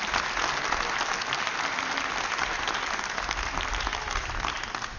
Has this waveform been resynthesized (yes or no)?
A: no